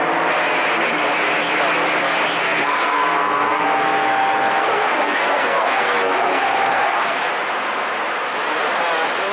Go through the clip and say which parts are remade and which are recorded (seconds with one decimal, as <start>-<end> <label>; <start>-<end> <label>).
0.0-2.4 recorded; 2.4-7.3 remade; 7.3-9.3 recorded